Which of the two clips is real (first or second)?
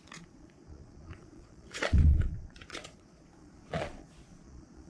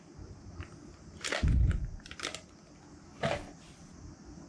second